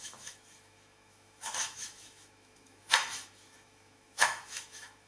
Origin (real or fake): fake